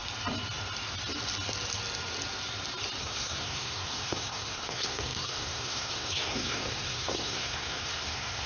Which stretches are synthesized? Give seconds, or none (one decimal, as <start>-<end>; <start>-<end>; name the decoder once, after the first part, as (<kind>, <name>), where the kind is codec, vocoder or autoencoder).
3.0-8.5 (codec, SNAC)